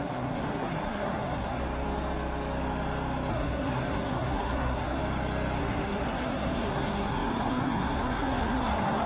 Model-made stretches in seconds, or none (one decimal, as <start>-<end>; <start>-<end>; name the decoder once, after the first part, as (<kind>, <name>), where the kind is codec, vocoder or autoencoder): 0.0-1.6 (codec, SNAC); 3.3-5.0; 5.6-9.1